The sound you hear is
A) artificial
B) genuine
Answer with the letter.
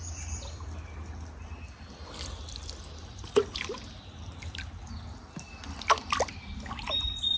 B